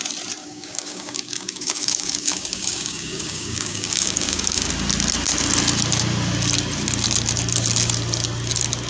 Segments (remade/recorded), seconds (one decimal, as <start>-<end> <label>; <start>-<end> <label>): 0.0-0.4 recorded; 0.4-4.7 remade; 4.7-8.9 recorded